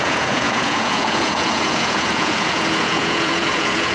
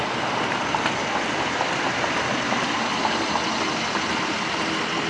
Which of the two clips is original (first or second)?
second